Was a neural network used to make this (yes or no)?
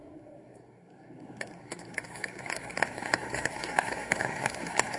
yes